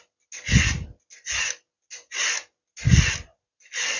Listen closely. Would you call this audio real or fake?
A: real